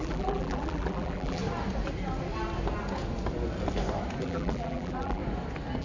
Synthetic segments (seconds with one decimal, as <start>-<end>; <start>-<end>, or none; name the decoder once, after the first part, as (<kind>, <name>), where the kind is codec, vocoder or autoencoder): 0.0-1.4 (vocoder, BigVGAN v2); 4.2-5.2